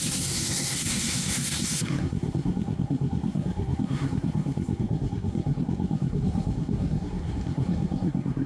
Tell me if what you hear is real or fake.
fake